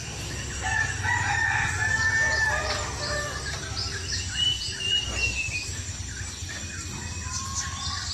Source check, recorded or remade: recorded